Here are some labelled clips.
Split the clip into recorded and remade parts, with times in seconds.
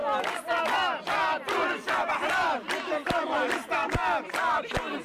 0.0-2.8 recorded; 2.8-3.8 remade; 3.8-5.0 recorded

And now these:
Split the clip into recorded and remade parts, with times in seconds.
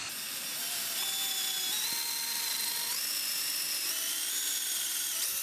0.0-5.4 recorded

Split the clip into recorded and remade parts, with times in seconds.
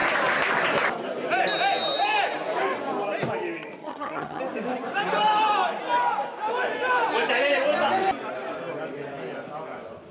0.0-3.8 recorded; 3.8-4.4 remade; 4.4-10.1 recorded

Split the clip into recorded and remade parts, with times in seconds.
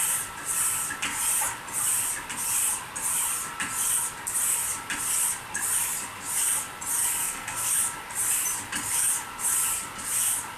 0.0-7.2 recorded; 7.2-7.7 remade; 7.7-10.6 recorded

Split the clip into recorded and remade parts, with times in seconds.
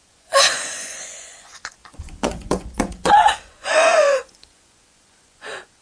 0.0-5.8 remade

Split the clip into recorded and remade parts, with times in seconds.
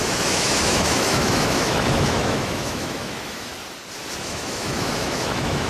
0.0-3.5 remade; 3.5-4.2 recorded; 4.2-5.7 remade